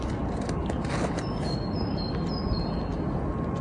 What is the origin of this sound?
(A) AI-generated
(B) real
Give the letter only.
B